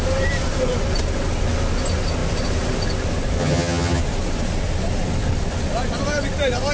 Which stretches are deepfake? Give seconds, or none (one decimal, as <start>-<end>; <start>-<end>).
3.4-4.0